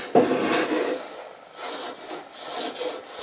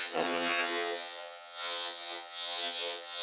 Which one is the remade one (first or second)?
second